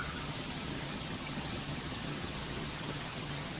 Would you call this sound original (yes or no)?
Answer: no